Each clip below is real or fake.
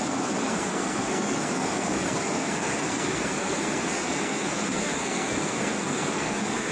fake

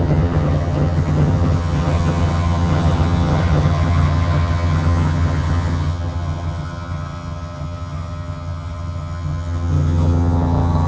fake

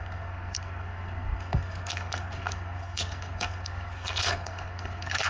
fake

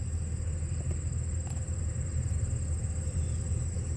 real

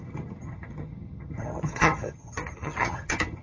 fake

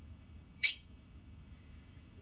fake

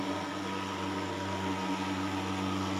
real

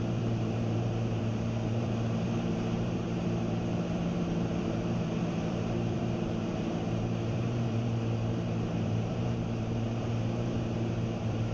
fake